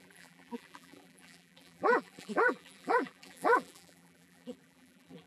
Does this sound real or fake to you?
fake